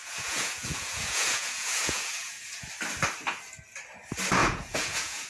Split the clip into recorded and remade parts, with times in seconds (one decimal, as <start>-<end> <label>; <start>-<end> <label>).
0.0-2.7 remade; 2.7-4.4 recorded; 4.4-5.3 remade